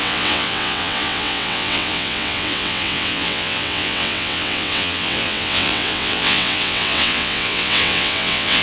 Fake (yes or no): yes